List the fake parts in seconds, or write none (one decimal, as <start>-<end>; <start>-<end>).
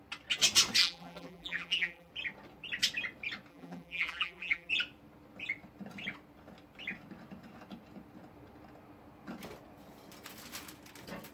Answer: 0.8-2.1; 3.5-4.7